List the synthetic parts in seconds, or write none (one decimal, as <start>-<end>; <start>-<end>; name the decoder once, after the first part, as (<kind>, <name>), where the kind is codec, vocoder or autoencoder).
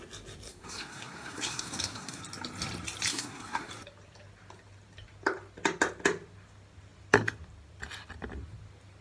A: 0.5-2.2 (codec, SNAC); 3.1-3.7